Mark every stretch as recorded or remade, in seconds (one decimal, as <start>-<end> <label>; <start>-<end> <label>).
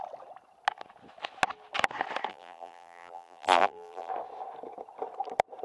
0.0-2.3 recorded; 2.3-4.1 remade; 4.1-5.6 recorded